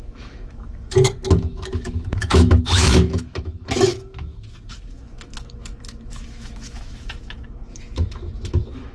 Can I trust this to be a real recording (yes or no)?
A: no